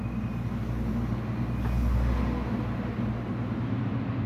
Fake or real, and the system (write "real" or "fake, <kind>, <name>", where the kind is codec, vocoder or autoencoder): real